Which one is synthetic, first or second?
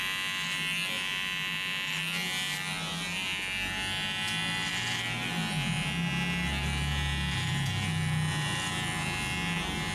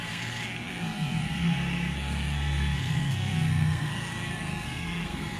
second